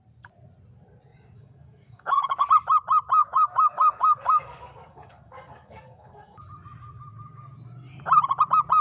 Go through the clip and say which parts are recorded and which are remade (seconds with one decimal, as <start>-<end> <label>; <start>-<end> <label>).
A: 0.0-1.1 recorded; 1.1-2.5 remade; 2.5-3.2 recorded; 3.2-6.4 remade; 6.4-8.8 recorded